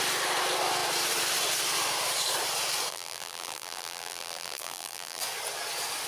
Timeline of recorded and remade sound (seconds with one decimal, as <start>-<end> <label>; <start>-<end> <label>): 0.0-2.9 recorded; 2.9-5.2 remade; 5.2-6.1 recorded